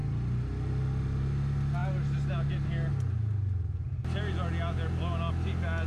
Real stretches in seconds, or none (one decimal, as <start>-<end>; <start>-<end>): 0.0-5.9